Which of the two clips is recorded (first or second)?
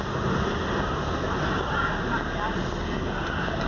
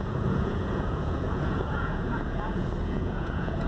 first